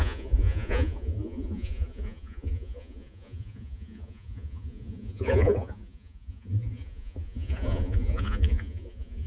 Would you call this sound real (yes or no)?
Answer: no